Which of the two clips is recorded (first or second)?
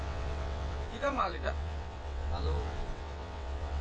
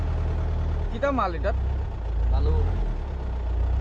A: second